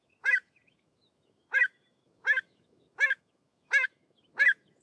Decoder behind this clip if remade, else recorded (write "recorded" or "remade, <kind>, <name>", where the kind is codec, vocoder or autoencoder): remade, autoencoder, DAC-VAE